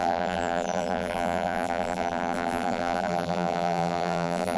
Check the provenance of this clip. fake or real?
fake